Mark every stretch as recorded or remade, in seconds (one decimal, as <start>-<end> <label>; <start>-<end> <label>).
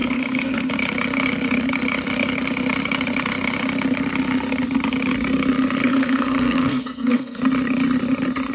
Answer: 0.0-0.7 remade; 0.7-5.8 recorded; 5.8-7.4 remade; 7.4-8.5 recorded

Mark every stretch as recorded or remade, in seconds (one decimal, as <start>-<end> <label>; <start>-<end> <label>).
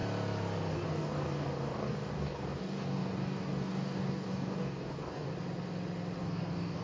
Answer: 0.0-0.7 recorded; 0.7-5.3 remade; 5.3-6.2 recorded; 6.2-6.8 remade